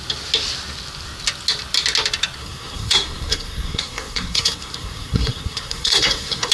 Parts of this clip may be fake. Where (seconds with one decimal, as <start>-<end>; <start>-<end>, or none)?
2.4-6.5